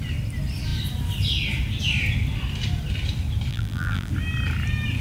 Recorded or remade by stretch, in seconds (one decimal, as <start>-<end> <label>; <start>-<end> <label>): 0.0-3.5 recorded; 3.5-4.1 remade; 4.1-5.0 recorded